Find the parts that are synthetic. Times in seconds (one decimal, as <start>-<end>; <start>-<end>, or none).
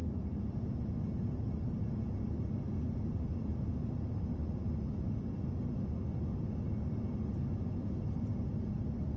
none